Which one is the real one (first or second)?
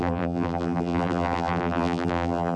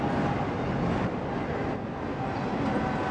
second